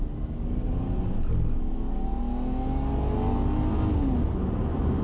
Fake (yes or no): no